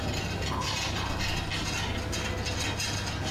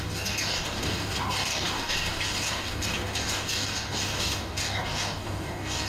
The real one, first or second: first